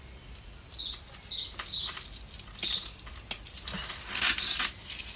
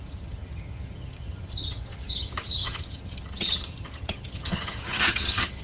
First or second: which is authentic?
first